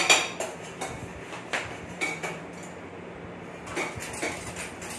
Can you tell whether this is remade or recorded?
recorded